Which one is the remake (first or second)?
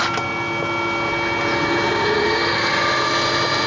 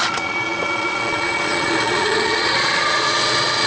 second